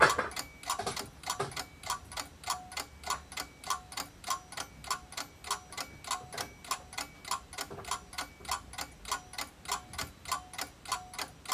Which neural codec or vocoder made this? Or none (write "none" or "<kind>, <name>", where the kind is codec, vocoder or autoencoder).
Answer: none